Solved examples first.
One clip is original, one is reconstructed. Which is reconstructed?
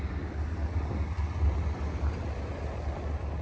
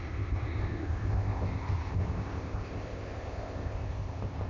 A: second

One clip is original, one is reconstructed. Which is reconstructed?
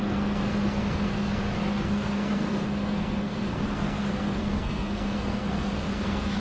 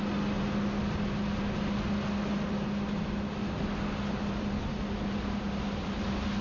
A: first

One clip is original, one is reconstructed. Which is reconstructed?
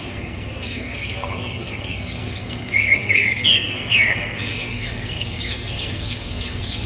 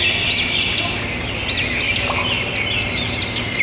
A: first